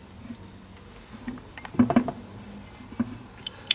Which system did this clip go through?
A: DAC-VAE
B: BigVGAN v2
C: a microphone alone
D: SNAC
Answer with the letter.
C